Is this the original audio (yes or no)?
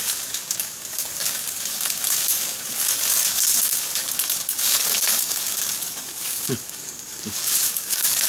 no